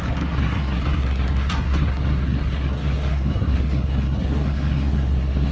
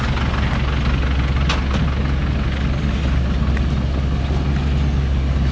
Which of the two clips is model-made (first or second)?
first